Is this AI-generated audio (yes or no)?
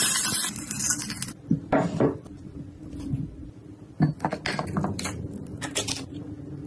no